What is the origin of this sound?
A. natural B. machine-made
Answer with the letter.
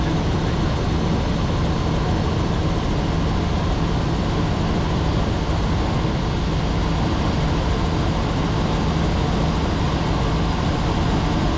A